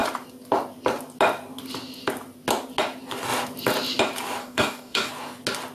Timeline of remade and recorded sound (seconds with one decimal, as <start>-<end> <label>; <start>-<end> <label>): 0.0-4.4 recorded; 4.4-5.1 remade; 5.1-5.7 recorded